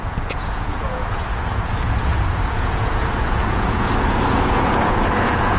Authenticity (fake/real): fake